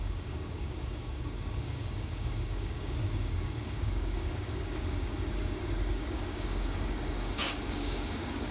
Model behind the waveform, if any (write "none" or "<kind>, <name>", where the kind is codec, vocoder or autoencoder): codec, DAC